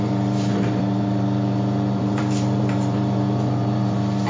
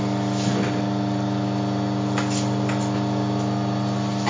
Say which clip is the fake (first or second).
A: first